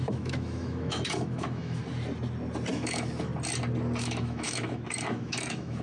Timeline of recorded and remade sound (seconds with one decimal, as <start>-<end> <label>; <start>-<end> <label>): 0.0-1.8 remade; 1.8-2.7 recorded; 2.7-3.3 remade; 3.3-4.0 recorded; 4.0-5.8 remade